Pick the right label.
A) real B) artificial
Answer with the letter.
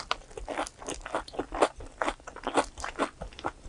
A